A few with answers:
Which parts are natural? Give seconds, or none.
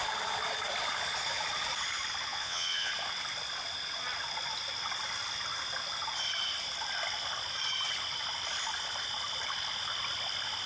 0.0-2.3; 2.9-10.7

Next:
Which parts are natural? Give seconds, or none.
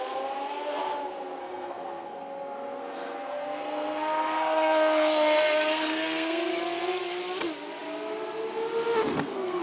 0.0-1.4; 6.5-9.1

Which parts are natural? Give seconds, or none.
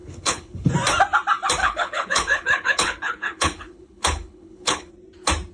0.7-1.6; 4.9-5.5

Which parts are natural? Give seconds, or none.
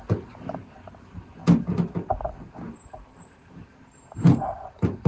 0.0-5.1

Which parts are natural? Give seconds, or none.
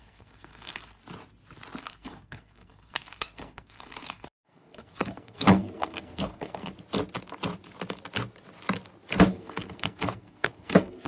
1.0-1.8; 6.7-9.3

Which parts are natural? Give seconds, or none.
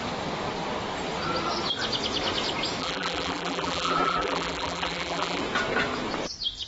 0.0-2.8; 5.4-6.7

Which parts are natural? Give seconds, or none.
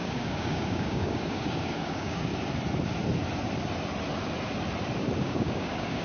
2.3-5.2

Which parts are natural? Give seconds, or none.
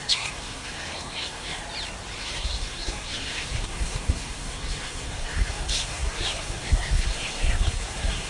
1.6-2.2